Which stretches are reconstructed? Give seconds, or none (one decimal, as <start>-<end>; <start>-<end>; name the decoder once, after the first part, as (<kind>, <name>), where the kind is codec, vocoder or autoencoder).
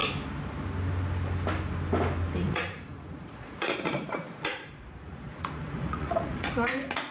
2.5-7.1 (vocoder, Vocos)